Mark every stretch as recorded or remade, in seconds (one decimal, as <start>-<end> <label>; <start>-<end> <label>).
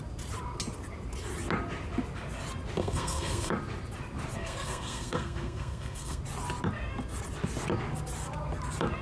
0.0-2.8 recorded; 2.8-3.5 remade; 3.5-4.4 recorded; 4.4-6.2 remade; 6.2-9.0 recorded